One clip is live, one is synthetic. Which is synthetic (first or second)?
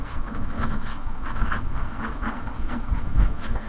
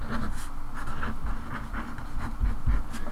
first